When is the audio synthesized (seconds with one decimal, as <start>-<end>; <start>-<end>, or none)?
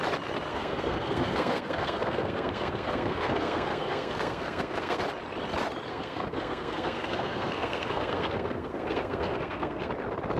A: 0.5-5.0; 5.9-9.9